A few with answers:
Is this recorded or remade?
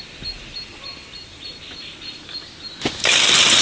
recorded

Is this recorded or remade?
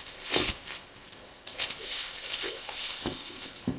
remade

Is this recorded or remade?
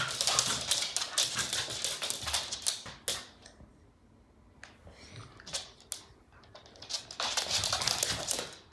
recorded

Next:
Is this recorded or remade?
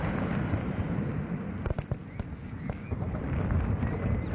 recorded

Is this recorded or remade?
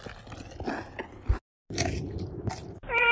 recorded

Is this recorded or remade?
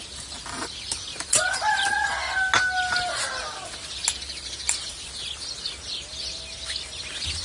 recorded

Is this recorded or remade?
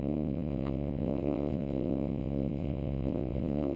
remade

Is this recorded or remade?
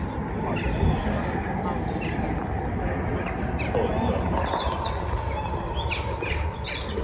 recorded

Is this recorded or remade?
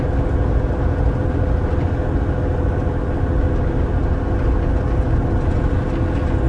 recorded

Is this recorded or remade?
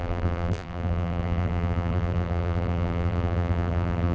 remade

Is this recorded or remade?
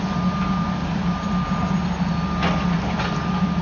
recorded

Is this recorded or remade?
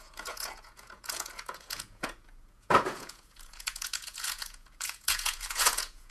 remade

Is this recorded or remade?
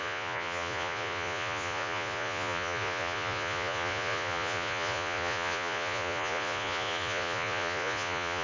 remade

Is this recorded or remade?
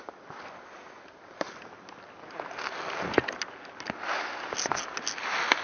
recorded